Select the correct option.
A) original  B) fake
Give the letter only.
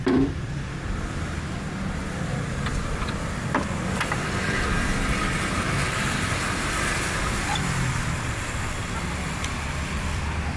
B